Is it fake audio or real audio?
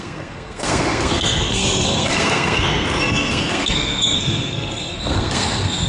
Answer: fake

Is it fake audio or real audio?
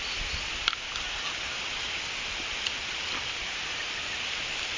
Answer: real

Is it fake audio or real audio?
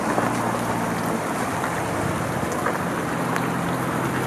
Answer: real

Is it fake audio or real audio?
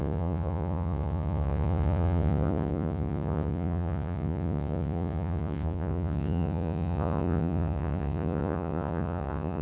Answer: fake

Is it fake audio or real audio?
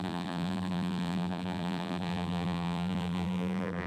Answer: fake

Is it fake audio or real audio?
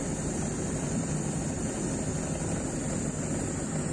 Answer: real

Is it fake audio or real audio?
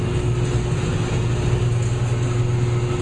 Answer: real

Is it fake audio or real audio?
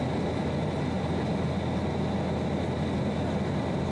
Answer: real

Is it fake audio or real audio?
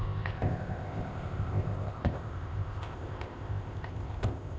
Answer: fake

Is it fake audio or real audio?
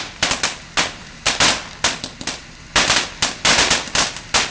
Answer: fake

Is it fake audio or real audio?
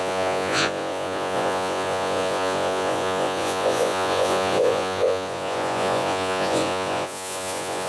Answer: fake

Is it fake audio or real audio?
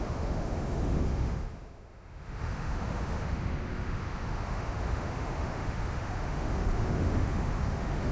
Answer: fake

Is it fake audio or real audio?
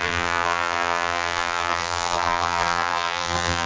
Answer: fake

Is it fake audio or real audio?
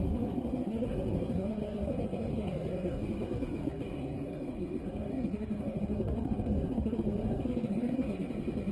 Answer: fake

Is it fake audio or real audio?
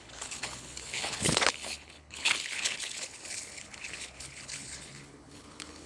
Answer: fake